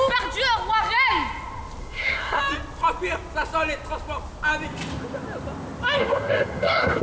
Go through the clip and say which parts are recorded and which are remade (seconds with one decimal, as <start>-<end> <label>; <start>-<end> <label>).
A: 0.0-1.8 recorded; 1.8-2.4 remade; 2.4-6.0 recorded; 6.0-7.0 remade